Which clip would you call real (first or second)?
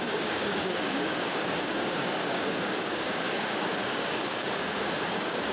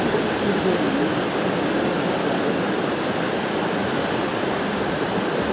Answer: second